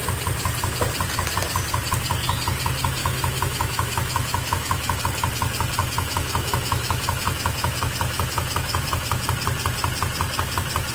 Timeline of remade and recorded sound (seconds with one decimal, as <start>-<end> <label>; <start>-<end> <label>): 0.0-3.0 recorded; 3.0-5.0 remade; 5.0-5.8 recorded; 5.8-9.2 remade; 9.2-10.9 recorded